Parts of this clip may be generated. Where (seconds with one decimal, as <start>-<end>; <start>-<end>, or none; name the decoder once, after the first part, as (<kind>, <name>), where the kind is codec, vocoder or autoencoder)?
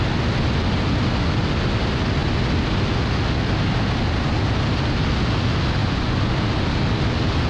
5.8-6.3 (vocoder, Vocos)